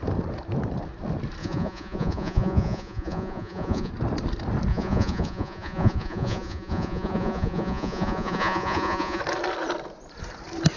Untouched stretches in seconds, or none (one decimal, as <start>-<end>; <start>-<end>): 0.0-1.4; 3.9-4.7; 9.2-10.8